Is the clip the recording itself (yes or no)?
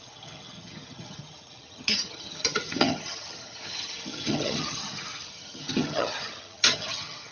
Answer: no